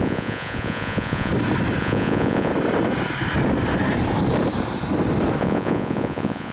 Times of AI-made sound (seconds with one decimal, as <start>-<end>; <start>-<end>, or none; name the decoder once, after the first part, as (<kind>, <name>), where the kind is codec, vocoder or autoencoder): 0.0-1.3 (vocoder, Vocos); 1.8-2.5; 5.4-6.5